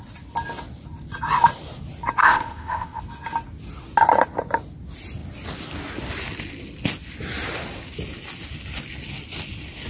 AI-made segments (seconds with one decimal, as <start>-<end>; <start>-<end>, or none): 2.2-3.0